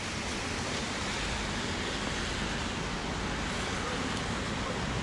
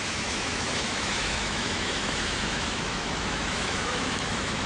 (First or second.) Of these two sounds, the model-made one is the second